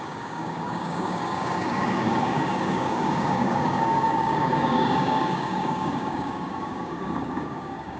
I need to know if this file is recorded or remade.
remade